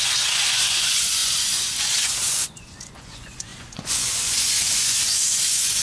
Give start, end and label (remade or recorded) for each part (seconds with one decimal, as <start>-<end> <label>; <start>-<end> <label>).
0.0-5.8 remade